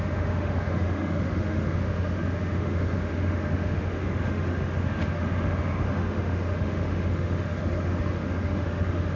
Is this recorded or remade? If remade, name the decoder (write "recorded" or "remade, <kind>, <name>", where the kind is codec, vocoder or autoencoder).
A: remade, autoencoder, DAC-VAE